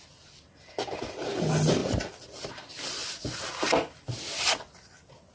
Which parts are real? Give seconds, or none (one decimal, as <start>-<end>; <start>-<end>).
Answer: 0.0-1.8; 2.5-5.3